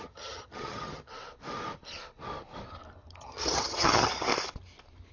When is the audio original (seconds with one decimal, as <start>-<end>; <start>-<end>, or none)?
1.1-3.2; 4.3-5.1